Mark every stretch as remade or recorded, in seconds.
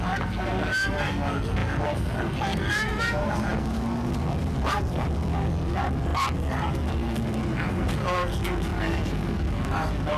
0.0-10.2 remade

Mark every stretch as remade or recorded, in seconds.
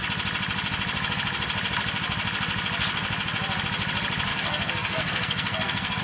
0.0-4.3 recorded; 4.3-6.0 remade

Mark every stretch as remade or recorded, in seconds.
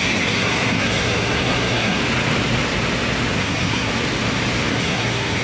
0.0-2.0 remade; 2.0-3.4 recorded; 3.4-3.9 remade; 3.9-4.7 recorded; 4.7-5.4 remade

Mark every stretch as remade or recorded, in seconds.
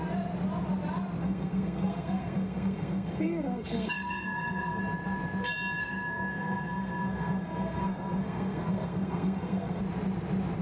0.0-1.2 recorded; 1.2-4.8 remade; 4.8-5.8 recorded; 5.8-9.8 remade; 9.8-10.6 recorded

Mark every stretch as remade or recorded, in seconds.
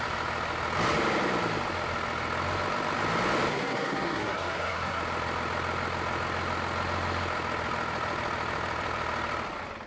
0.0-3.5 recorded; 3.5-5.0 remade; 5.0-9.9 recorded